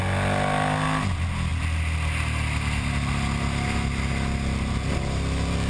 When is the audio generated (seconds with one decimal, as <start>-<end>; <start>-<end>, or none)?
none